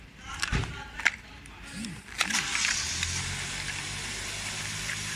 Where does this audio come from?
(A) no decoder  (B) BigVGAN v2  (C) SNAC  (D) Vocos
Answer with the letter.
B